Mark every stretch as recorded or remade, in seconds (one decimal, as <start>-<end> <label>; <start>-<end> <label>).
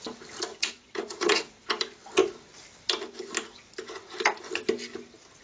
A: 0.0-0.5 recorded; 0.5-1.7 remade; 1.7-5.4 recorded